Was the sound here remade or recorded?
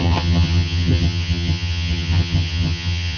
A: remade